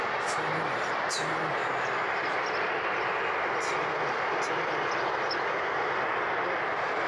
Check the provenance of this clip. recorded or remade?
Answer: recorded